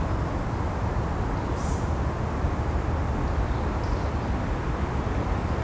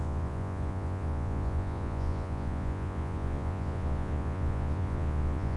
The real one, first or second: first